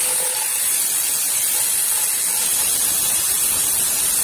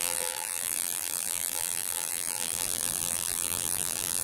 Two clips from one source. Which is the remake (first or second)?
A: second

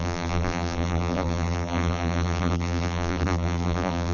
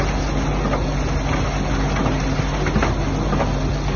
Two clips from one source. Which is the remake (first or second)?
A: first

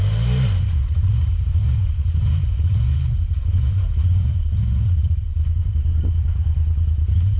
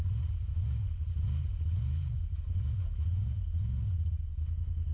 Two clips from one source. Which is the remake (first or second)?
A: first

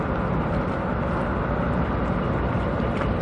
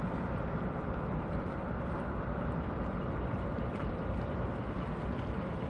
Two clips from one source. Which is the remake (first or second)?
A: second